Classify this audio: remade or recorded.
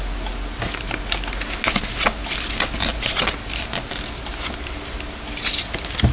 recorded